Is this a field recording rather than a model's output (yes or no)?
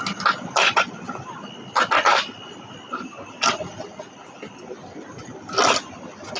yes